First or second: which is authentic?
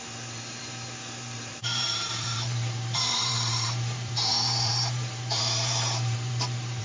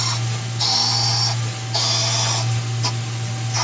second